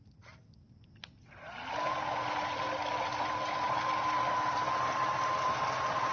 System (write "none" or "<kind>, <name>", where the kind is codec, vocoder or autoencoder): none